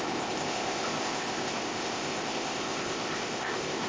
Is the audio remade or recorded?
remade